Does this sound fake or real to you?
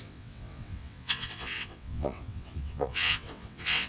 fake